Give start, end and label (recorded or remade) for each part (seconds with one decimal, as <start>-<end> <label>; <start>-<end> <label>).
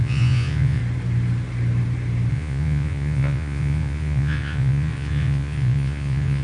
0.0-0.8 remade; 0.8-2.3 recorded; 2.3-6.4 remade